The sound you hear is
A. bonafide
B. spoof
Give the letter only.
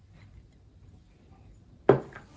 A